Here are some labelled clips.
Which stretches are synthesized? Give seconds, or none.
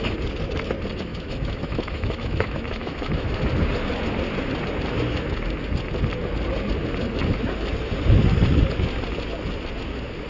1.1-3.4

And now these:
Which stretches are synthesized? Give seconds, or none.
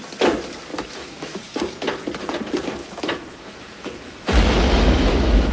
0.7-1.4; 2.8-5.5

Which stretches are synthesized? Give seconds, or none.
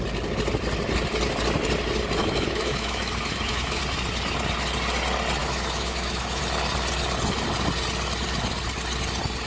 2.2-3.8; 5.4-6.4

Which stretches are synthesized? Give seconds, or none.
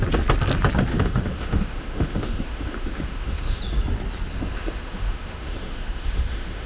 0.9-3.6; 4.3-6.7